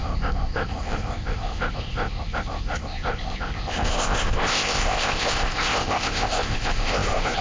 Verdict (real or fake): fake